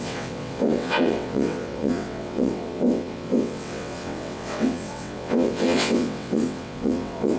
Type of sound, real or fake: fake